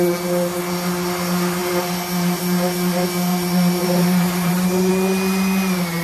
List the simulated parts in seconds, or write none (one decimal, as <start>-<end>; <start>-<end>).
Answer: 1.6-2.4; 3.3-4.9